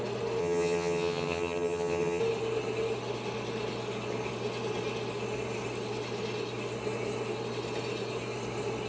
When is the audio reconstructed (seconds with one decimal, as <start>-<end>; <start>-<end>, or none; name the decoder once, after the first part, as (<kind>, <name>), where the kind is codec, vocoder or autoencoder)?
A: 0.4-2.2 (vocoder, HiFi-GAN)